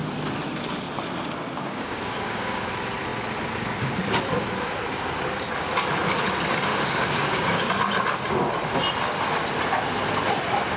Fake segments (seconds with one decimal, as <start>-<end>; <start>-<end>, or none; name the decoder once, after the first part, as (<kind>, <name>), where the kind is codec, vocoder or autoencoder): 1.6-2.7 (codec, DAC); 6.7-7.6